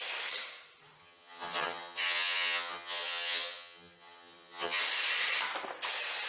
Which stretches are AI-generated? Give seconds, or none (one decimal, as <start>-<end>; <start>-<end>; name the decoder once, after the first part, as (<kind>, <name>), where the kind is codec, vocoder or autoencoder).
1.0-4.8 (vocoder, HiFi-GAN)